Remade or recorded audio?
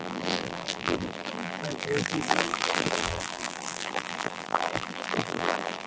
remade